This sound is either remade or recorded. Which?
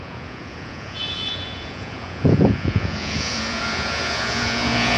remade